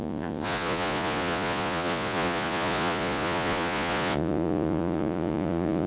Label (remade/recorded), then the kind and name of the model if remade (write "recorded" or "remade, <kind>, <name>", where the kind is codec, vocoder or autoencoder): remade, vocoder, Vocos